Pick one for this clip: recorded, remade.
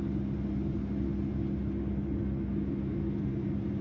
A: recorded